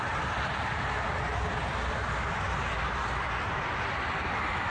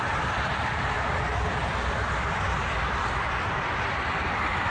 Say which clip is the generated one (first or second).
second